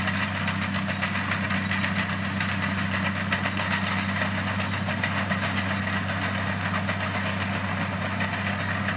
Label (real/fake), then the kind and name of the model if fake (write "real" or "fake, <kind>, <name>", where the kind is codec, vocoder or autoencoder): real